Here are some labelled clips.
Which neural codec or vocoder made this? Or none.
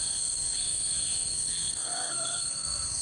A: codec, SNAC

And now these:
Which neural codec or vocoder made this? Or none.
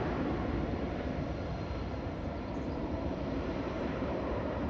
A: vocoder, BigVGAN v2